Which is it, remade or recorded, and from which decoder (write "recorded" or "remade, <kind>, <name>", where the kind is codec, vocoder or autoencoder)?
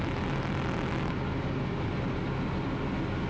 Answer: recorded